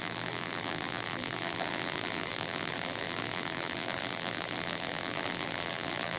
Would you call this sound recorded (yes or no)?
no